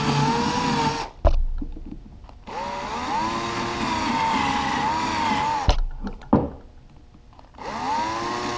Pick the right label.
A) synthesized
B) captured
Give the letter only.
B